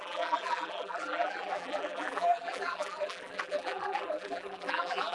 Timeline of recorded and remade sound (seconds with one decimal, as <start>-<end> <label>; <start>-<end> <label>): 0.0-5.1 remade